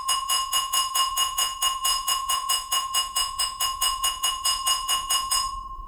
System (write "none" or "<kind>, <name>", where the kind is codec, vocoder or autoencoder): vocoder, Vocos